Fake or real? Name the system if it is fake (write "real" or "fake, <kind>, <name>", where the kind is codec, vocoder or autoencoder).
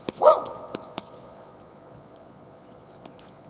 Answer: fake, vocoder, Vocos